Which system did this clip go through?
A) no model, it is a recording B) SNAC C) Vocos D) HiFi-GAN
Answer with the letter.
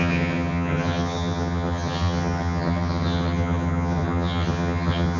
D